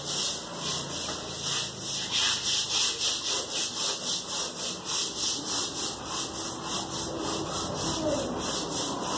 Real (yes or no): yes